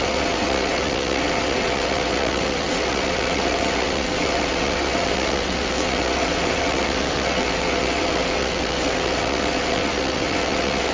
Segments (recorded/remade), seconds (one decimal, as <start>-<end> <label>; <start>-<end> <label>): 0.0-10.9 remade